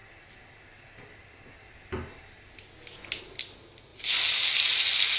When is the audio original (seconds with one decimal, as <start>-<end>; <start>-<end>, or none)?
0.0-5.2